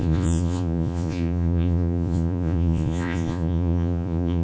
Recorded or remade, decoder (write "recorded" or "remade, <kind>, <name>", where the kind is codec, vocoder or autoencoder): remade, vocoder, Vocos